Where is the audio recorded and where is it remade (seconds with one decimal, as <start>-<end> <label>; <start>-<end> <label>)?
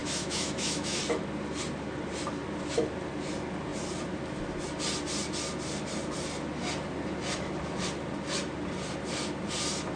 0.0-1.0 remade; 1.0-10.0 recorded